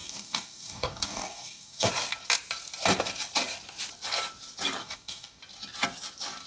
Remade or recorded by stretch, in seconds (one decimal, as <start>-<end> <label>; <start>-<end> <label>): 0.0-1.9 remade; 1.9-4.8 recorded; 4.8-5.4 remade; 5.4-6.5 recorded